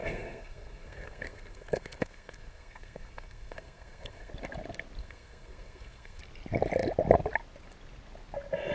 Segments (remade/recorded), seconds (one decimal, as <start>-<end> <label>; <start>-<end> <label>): 0.0-4.3 remade; 4.3-5.0 recorded; 5.0-6.2 remade; 6.2-8.7 recorded